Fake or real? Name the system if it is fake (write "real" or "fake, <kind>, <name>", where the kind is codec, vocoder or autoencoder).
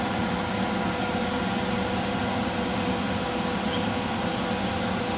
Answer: real